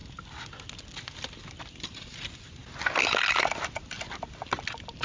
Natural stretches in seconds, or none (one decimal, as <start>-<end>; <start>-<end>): 0.0-1.5; 2.6-5.0

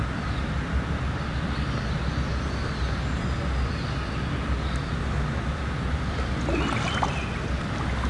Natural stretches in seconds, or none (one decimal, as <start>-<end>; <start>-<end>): 0.9-8.1

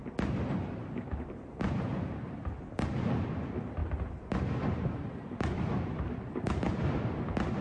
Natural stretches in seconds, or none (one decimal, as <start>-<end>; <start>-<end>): 3.2-3.8; 6.8-7.6

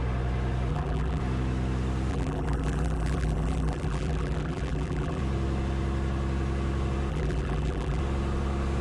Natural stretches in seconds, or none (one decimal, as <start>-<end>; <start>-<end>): 0.0-0.7; 1.2-2.1; 5.2-7.1; 8.0-8.8

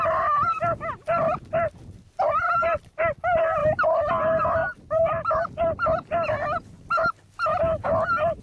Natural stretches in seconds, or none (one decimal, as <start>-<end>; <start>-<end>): 0.0-0.4; 1.8-3.6; 4.1-4.6

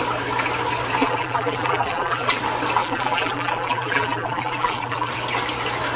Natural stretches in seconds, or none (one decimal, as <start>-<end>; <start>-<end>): 0.0-1.0; 2.4-2.8; 5.1-6.0

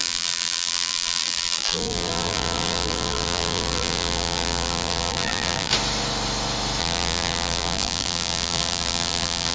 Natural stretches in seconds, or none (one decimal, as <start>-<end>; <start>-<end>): 5.7-6.8